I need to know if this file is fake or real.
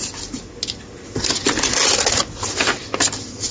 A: real